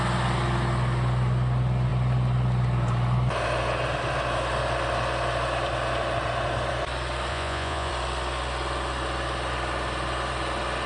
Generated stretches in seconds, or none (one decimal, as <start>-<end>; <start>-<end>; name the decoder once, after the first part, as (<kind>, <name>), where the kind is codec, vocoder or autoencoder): 7.3-7.9 (vocoder, Vocos)